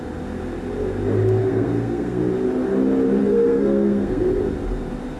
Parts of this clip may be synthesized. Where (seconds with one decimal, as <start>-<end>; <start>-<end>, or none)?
1.4-2.2; 3.2-4.4